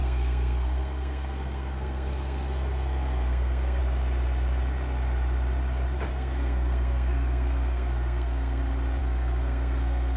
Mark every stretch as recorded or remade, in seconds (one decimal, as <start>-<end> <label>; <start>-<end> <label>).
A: 0.0-3.8 remade; 3.8-6.1 recorded; 6.1-8.6 remade; 8.6-9.0 recorded; 9.0-10.2 remade